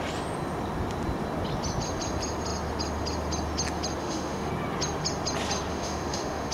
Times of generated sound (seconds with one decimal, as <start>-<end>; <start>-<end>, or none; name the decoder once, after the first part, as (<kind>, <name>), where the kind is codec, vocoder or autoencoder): 4.0-4.5 (autoencoder, DAC-VAE); 5.7-6.5